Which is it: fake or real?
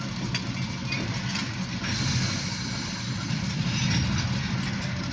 real